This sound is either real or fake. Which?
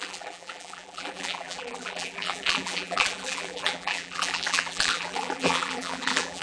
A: fake